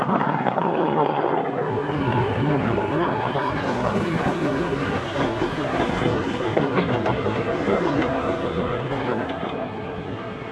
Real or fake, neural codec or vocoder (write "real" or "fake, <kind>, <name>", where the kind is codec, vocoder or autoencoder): fake, codec, SNAC